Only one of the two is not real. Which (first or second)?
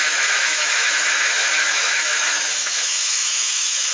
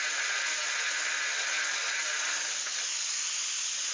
first